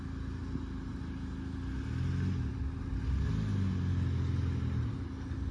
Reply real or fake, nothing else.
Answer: real